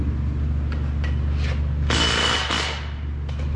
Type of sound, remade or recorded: recorded